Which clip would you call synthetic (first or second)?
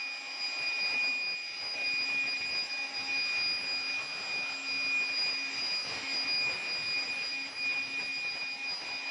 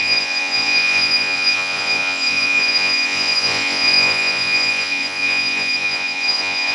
second